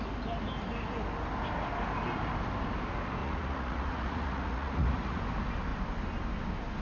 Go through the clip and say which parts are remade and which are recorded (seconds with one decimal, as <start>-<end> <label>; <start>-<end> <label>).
0.0-3.2 recorded; 3.2-5.2 remade; 5.2-6.8 recorded